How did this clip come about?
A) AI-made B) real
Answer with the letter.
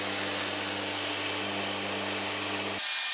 B